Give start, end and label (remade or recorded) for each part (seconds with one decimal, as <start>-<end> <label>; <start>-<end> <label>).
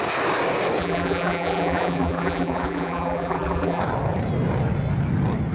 0.0-0.8 recorded; 0.8-3.8 remade; 3.8-5.5 recorded